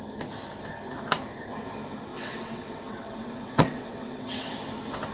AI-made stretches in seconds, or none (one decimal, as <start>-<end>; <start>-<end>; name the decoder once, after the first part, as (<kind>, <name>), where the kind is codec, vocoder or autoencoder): 2.1-4.5 (vocoder, WaveNeXt)

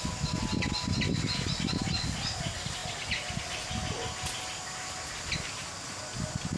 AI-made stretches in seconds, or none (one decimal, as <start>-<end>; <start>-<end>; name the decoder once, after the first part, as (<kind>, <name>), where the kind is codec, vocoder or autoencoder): none

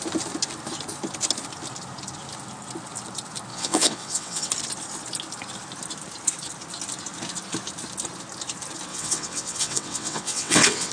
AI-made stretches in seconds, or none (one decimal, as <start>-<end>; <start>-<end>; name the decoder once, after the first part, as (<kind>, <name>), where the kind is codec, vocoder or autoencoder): 3.5-4.5 (vocoder, WaveNeXt); 8.9-10.9

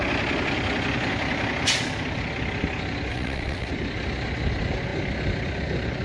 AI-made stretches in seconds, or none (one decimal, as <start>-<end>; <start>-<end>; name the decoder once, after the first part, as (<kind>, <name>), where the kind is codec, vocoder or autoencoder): 3.1-3.7 (vocoder, WaveNeXt)

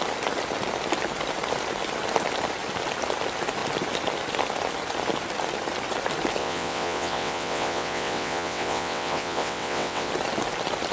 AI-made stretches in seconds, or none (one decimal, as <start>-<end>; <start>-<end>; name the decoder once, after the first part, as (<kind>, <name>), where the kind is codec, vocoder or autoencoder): 6.4-10.1 (vocoder, WaveNeXt)

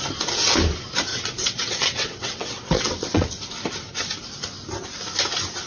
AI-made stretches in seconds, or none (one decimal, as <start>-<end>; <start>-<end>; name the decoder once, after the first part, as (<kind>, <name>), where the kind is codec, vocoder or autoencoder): 1.1-3.5 (vocoder, WaveNeXt)